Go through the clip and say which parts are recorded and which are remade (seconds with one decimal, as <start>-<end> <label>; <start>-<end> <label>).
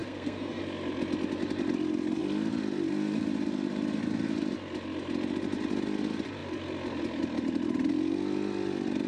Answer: 0.0-0.6 remade; 0.6-9.1 recorded